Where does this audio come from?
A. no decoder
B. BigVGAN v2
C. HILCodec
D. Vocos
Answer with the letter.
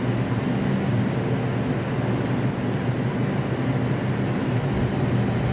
A